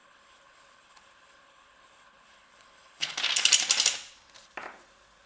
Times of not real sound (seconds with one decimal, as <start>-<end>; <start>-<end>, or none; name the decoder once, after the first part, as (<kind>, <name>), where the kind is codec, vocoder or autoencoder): 0.0-3.2 (codec, HILCodec)